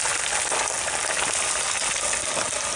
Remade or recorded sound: recorded